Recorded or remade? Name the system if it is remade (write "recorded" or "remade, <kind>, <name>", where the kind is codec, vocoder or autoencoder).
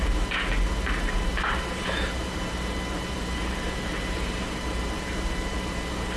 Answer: remade, vocoder, BigVGAN v2